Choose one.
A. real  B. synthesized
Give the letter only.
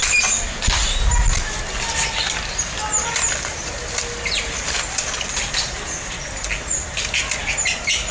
A